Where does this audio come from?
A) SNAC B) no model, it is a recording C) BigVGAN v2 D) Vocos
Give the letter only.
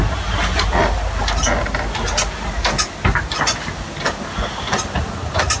B